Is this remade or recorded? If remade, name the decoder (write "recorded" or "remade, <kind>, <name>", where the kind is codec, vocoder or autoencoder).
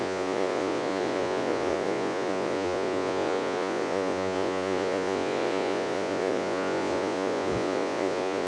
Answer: remade, vocoder, Vocos